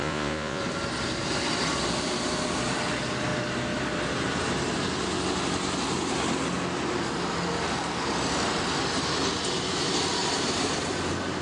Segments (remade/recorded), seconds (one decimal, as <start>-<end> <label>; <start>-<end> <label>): 0.0-0.6 remade; 0.6-11.4 recorded